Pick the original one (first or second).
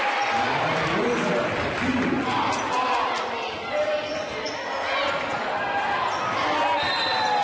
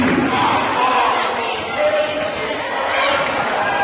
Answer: first